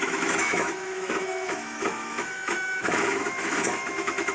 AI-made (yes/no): yes